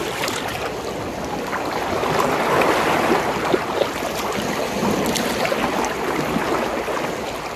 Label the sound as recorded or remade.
recorded